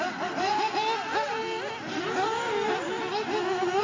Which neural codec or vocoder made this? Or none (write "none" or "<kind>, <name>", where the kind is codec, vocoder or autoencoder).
none